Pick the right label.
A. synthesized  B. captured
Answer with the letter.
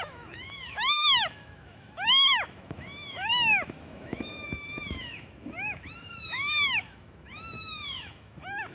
A